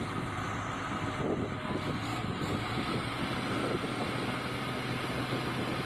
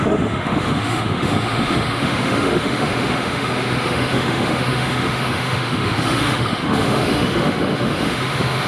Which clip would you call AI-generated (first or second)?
second